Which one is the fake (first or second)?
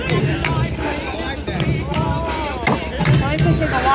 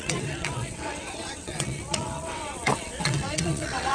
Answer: second